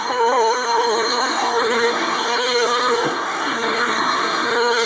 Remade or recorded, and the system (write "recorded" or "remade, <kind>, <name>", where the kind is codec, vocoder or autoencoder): remade, codec, SNAC